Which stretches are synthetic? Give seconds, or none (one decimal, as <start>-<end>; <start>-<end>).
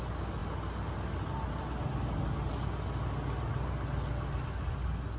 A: none